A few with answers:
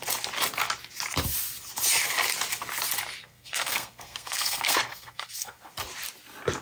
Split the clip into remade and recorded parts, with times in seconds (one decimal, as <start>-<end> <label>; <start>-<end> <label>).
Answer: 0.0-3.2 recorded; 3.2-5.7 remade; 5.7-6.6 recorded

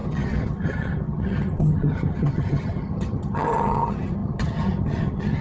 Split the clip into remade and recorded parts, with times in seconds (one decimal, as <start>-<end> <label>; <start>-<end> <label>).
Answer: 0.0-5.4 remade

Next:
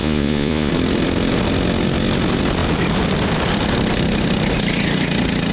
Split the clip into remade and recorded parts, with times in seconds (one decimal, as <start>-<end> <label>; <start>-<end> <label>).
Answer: 0.0-0.7 remade; 0.7-5.5 recorded